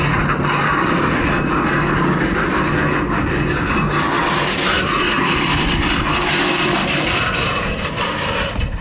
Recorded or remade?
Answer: recorded